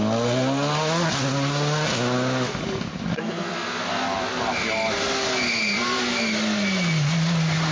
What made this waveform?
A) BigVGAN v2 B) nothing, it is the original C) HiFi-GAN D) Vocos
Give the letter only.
B